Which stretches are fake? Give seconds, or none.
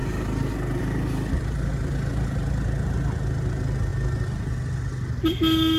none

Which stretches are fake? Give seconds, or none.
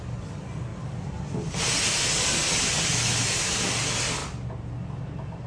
none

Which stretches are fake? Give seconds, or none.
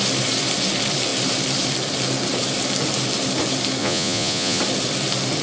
3.8-4.6 (vocoder, Vocos)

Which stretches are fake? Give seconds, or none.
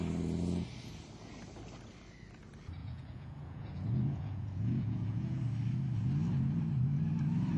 2.8-5.4 (vocoder, Vocos)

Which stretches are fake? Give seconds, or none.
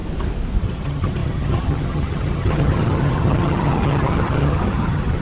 0.6-5.2 (vocoder, HiFi-GAN)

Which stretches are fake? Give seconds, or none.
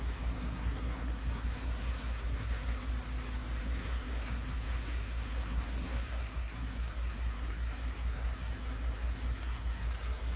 0.0-2.9 (codec, SNAC); 3.6-10.4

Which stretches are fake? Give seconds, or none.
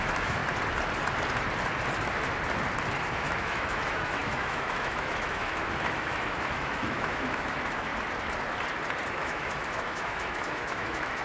0.0-0.4 (autoencoder, DAC-VAE); 3.0-7.9; 9.1-11.2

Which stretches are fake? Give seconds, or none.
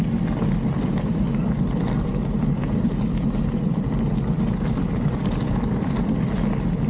none